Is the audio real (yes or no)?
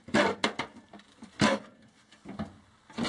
yes